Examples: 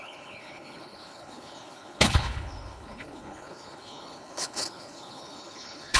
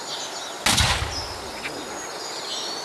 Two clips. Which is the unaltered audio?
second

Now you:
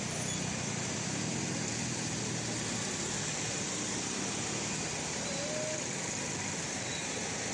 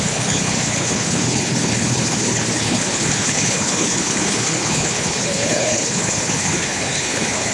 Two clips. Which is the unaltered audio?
first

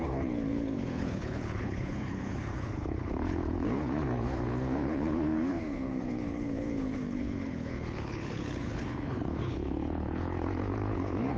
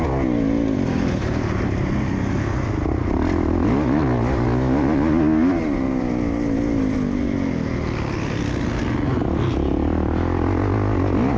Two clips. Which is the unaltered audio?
second